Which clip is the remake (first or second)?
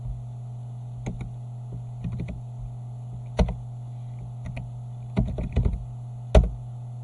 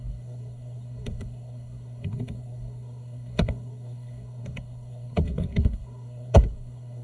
second